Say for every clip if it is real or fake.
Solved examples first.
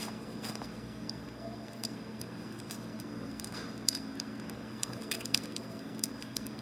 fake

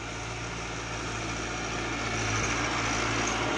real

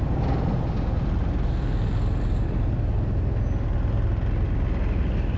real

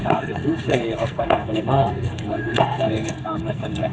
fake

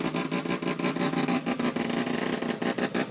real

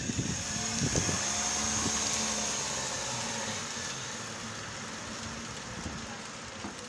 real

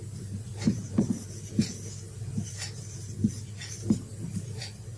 real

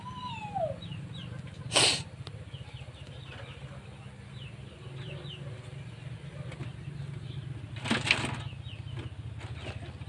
real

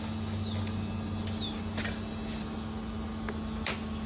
real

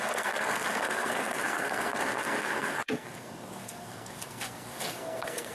fake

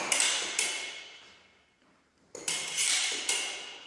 real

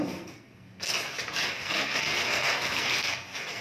fake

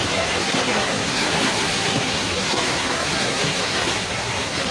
fake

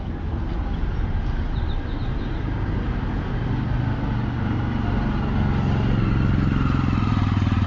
real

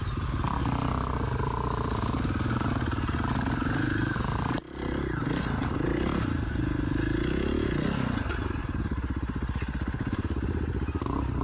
real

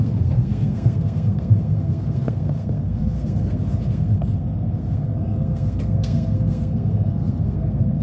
fake